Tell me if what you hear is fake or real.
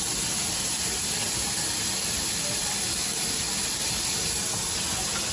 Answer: real